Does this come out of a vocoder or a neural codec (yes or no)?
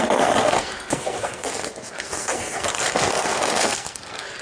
yes